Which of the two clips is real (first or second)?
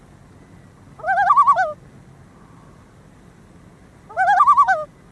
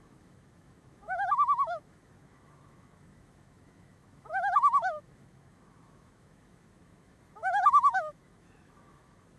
first